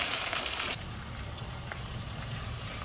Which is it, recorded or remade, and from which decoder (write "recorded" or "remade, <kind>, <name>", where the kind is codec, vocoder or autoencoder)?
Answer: remade, vocoder, BigVGAN v2